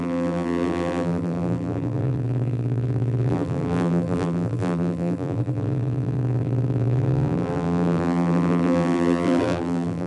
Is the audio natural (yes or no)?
no